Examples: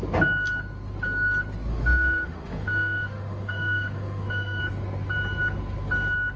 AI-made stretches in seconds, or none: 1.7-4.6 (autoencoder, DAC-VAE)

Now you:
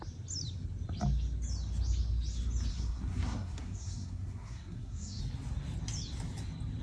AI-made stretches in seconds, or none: 2.7-5.2 (codec, SNAC)

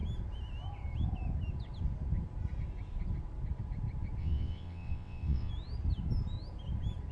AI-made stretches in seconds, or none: 4.2-5.5 (vocoder, WaveNeXt)

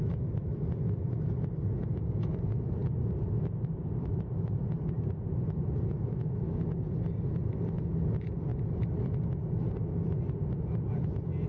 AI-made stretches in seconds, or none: 2.8-5.1 (vocoder, BigVGAN v2)

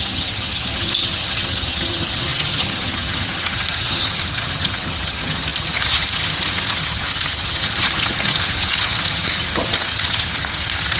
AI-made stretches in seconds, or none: 0.0-11.0 (vocoder, HiFi-GAN)

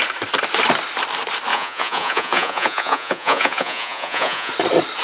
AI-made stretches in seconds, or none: 1.5-4.5 (vocoder, Vocos)

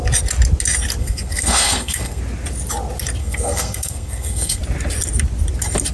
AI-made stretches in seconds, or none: 1.0-2.2 (codec, SNAC); 3.2-4.6

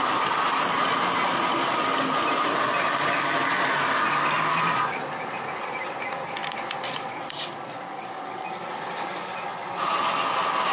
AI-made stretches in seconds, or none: none